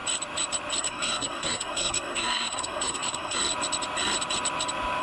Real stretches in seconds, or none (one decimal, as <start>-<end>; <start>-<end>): 0.0-0.8; 3.4-5.0